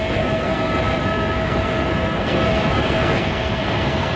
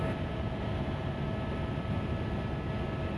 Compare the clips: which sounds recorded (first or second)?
second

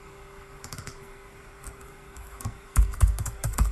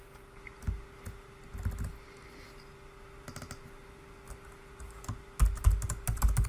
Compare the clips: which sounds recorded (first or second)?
second